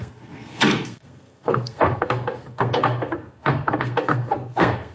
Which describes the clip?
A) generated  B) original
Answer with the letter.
A